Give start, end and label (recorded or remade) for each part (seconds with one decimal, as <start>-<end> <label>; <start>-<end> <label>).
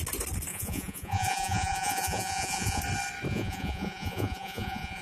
0.0-0.5 recorded; 0.5-2.8 remade; 2.8-3.3 recorded; 3.3-5.0 remade